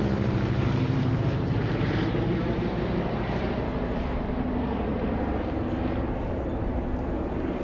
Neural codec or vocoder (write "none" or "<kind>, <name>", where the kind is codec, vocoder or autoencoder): vocoder, BigVGAN v2